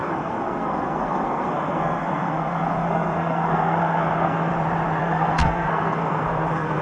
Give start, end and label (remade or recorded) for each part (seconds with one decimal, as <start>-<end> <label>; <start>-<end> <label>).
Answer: 0.0-4.5 remade; 4.5-5.0 recorded; 5.0-6.8 remade